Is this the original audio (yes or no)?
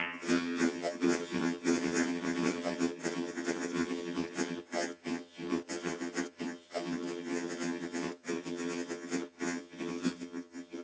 no